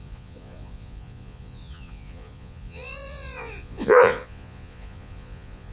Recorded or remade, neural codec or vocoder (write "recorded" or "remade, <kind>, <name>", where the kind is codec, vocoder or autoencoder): remade, vocoder, Vocos